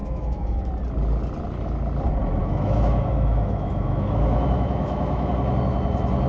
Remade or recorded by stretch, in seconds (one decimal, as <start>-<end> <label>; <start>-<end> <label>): 0.0-0.7 remade; 0.7-2.4 recorded; 2.4-5.3 remade; 5.3-6.3 recorded